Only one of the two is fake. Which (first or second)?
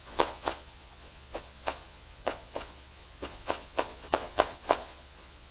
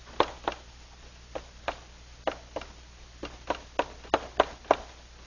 first